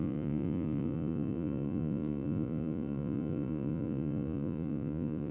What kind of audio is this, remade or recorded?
remade